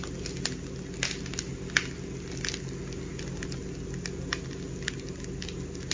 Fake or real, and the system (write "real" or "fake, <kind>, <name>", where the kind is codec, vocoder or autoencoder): real